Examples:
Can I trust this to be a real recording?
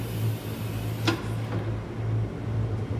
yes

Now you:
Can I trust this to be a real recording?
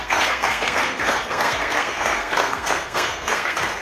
no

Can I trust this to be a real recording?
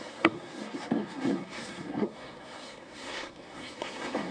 no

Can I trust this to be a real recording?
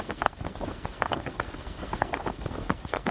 no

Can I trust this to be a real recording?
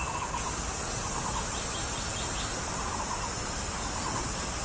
yes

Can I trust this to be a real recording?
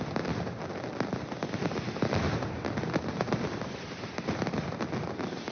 yes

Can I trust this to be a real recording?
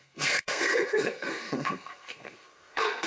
no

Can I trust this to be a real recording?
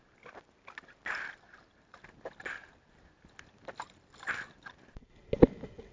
yes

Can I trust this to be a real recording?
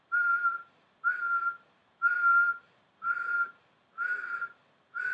yes